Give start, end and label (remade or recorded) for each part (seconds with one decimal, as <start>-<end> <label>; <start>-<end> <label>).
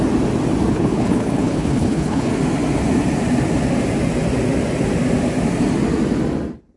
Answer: 0.0-0.7 recorded; 0.7-2.3 remade; 2.3-6.8 recorded